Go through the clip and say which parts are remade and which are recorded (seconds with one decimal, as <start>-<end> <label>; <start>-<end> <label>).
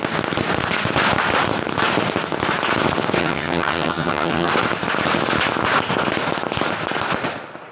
0.0-3.2 recorded; 3.2-4.5 remade; 4.5-7.7 recorded